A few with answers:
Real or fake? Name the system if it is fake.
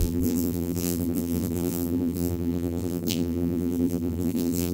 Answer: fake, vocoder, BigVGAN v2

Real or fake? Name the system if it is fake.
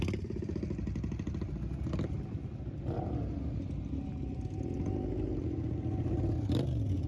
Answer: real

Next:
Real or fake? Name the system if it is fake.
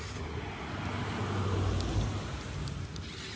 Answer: real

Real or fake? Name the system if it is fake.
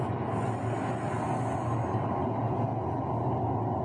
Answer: real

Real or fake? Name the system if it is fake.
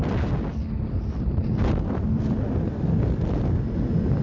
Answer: real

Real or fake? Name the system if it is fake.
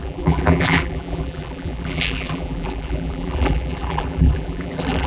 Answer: fake, vocoder, BigVGAN v2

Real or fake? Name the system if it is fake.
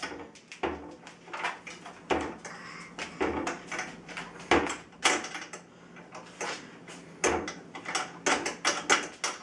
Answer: real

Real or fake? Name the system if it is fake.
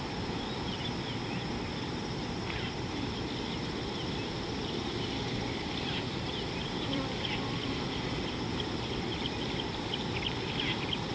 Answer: fake, vocoder, BigVGAN v2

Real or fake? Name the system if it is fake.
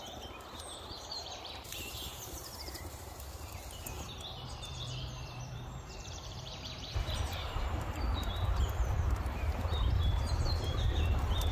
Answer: fake, vocoder, BigVGAN v2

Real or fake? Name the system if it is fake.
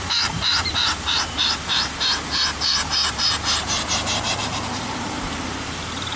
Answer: fake, vocoder, BigVGAN v2